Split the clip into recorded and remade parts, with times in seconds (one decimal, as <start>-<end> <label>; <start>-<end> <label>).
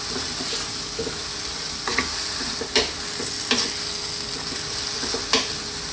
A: 0.0-5.9 recorded